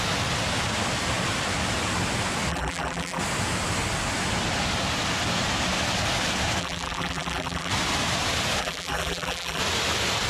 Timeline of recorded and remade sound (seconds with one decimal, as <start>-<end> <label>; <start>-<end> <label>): 0.0-2.5 recorded; 2.5-3.2 remade; 3.2-6.6 recorded; 6.6-7.7 remade; 7.7-8.6 recorded; 8.6-9.6 remade; 9.6-10.3 recorded